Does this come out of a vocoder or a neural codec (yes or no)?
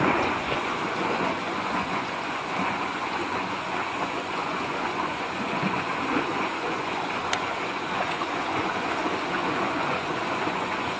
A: yes